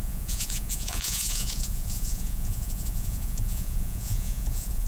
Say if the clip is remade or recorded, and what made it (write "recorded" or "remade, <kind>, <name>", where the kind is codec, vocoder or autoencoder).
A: remade, vocoder, Vocos